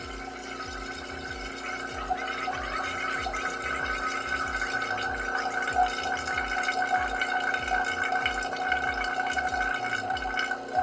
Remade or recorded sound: recorded